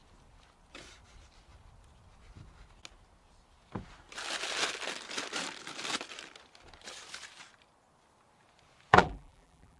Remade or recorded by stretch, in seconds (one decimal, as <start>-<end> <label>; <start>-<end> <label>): 0.0-8.9 recorded; 8.9-9.8 remade